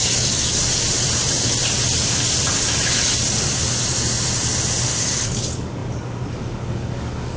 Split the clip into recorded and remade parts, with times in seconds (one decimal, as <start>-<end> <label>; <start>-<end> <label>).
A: 0.0-0.6 remade; 0.6-5.0 recorded; 5.0-7.4 remade